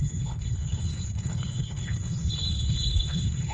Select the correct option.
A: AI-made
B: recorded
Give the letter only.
A